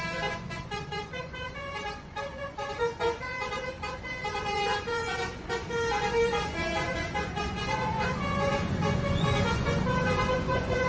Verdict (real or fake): fake